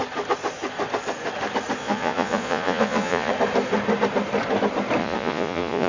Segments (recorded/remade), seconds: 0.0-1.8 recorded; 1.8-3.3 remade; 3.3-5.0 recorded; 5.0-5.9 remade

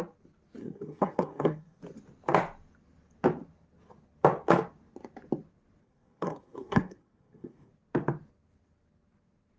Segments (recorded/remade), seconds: 0.0-0.6 recorded; 0.6-1.8 remade; 1.8-5.8 recorded; 5.8-7.7 remade; 7.7-9.6 recorded

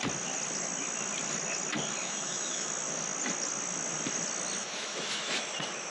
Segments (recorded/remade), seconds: 0.0-2.0 recorded; 2.0-2.7 remade; 2.7-4.6 recorded; 4.6-5.4 remade; 5.4-5.9 recorded

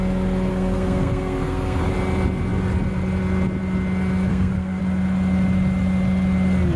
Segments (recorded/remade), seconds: 0.0-0.5 recorded; 0.5-1.9 remade; 1.9-4.3 recorded; 4.3-4.8 remade; 4.8-6.8 recorded